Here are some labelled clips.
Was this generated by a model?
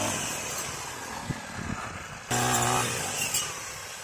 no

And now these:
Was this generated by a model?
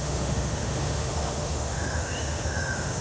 yes